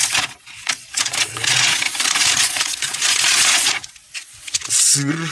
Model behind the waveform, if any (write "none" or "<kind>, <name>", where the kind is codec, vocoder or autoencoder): vocoder, Vocos